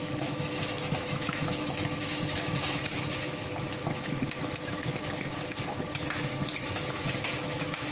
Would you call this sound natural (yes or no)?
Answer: no